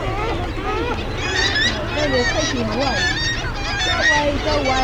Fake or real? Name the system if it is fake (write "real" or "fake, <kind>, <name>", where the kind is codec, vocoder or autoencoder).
real